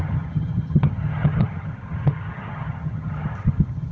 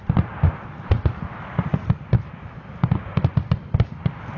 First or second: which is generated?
first